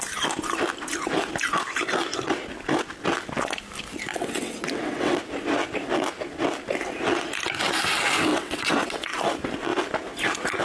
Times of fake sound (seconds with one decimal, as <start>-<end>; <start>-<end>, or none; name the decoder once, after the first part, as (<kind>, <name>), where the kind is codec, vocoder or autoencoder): 4.1-5.2 (vocoder, WaveNeXt); 8.3-9.2